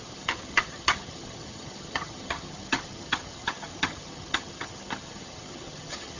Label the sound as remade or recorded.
remade